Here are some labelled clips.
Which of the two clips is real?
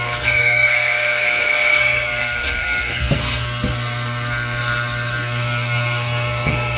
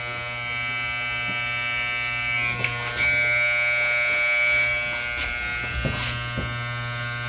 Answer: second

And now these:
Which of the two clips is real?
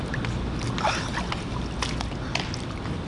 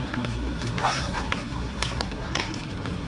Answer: first